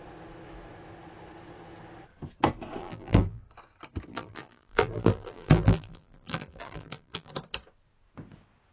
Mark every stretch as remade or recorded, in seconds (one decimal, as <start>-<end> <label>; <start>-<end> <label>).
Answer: 0.0-2.8 recorded; 2.8-3.4 remade; 3.4-4.1 recorded; 4.1-7.3 remade; 7.3-8.7 recorded